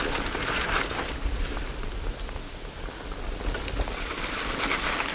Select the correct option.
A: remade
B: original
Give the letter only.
B